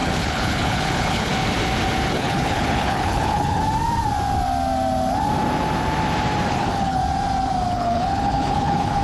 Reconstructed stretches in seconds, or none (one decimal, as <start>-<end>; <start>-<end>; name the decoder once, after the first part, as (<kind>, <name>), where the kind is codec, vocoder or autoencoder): 0.0-1.3 (codec, HILCodec); 2.1-3.6; 6.5-7.0; 7.7-9.0